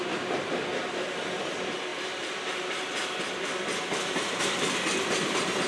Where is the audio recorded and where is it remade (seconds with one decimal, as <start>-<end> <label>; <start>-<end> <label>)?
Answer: 0.0-5.7 remade